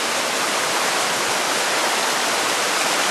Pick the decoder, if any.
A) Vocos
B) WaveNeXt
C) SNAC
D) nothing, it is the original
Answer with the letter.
D